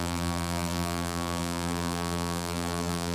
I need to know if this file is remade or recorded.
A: remade